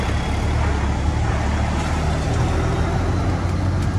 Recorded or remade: recorded